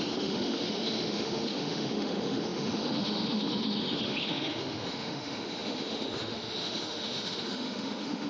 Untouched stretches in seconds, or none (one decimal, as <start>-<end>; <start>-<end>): none